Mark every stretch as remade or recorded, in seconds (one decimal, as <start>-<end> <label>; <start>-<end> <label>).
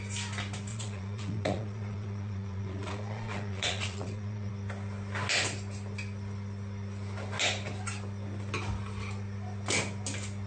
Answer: 0.0-0.7 recorded; 0.7-4.5 remade; 4.5-10.5 recorded